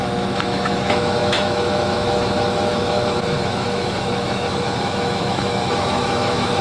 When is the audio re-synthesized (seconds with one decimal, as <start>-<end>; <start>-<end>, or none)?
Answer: 0.0-6.6